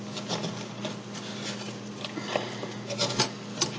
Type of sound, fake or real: real